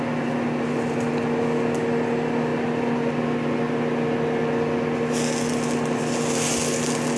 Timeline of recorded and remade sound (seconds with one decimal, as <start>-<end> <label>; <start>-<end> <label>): 0.0-7.2 recorded